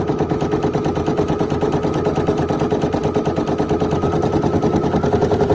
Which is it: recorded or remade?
recorded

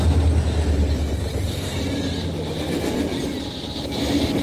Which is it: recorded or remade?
recorded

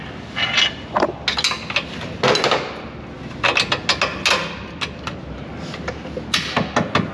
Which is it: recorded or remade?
recorded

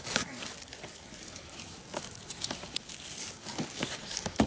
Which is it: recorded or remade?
remade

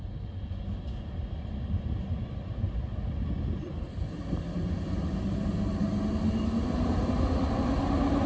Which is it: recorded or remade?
recorded